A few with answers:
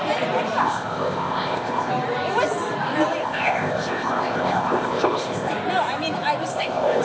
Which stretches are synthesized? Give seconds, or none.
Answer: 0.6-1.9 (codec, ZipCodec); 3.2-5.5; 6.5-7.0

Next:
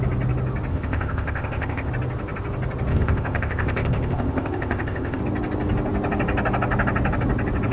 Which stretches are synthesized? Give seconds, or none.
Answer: 0.7-1.9 (codec, ZipCodec); 2.9-5.2